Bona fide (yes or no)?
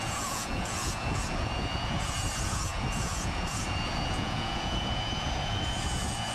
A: no